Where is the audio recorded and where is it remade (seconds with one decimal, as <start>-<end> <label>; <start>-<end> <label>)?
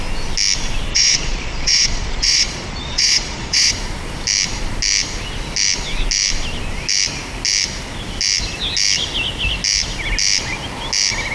0.0-0.9 recorded; 0.9-3.7 remade; 3.7-11.3 recorded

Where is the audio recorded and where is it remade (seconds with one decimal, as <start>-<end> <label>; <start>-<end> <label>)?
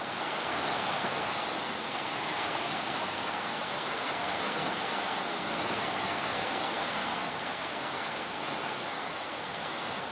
0.0-10.1 remade